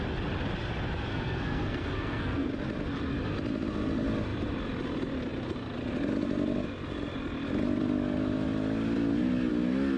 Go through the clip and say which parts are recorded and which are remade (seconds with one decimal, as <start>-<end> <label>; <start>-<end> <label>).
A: 0.0-1.1 recorded; 1.1-2.5 remade; 2.5-10.0 recorded